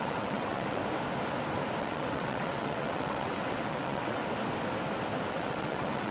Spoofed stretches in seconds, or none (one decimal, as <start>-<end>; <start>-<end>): 0.0-0.8; 1.8-4.2; 5.3-6.1